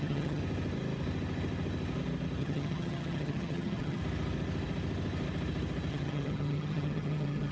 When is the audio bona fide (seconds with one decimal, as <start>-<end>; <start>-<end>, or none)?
0.4-2.4; 4.0-5.9